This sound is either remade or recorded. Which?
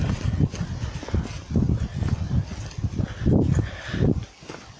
recorded